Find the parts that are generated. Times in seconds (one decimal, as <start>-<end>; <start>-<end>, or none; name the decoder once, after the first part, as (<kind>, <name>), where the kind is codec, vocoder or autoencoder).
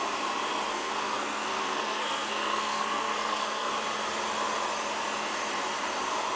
0.7-3.7 (codec, SNAC)